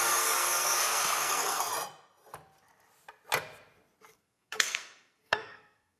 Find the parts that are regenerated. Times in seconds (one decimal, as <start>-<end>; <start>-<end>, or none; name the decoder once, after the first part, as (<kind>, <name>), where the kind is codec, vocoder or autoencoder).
0.0-1.7 (codec, SNAC); 4.1-6.0